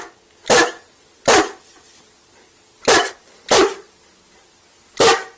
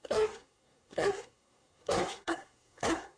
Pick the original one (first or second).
first